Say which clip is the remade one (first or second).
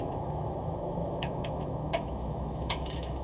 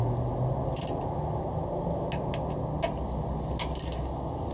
first